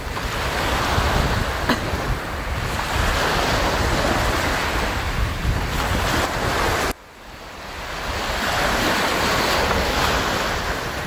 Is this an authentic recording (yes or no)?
yes